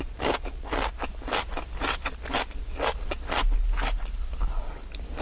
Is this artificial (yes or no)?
no